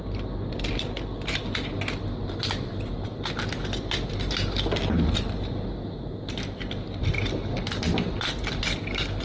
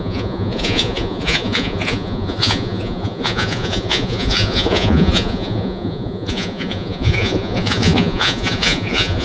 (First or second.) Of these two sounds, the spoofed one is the second